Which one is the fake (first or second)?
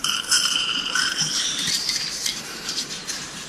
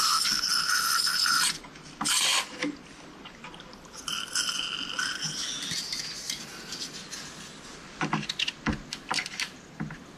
first